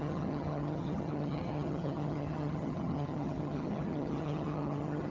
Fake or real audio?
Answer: fake